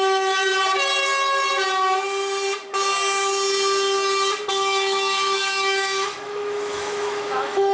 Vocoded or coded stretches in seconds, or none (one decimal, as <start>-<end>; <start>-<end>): 0.0-0.5; 4.5-7.7